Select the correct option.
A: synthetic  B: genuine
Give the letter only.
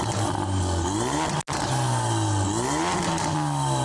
B